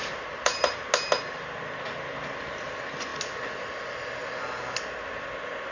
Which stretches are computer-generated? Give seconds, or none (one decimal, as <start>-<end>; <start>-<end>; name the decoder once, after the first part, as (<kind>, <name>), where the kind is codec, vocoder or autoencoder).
0.0-0.9 (vocoder, BigVGAN v2)